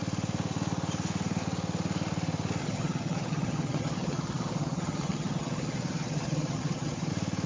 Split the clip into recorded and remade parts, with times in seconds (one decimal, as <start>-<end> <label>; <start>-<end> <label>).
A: 0.0-2.6 recorded; 2.6-7.1 remade; 7.1-7.5 recorded